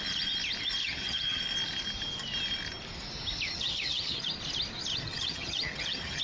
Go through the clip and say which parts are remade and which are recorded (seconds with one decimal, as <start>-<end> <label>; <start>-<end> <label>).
0.0-0.8 recorded; 0.8-1.4 remade; 1.4-3.5 recorded; 3.5-4.3 remade; 4.3-4.9 recorded; 4.9-6.2 remade